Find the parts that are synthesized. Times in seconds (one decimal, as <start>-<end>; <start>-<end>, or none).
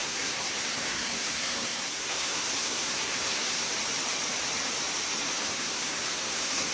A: 0.0-3.7; 5.4-6.7